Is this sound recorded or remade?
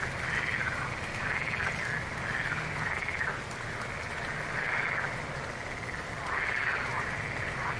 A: recorded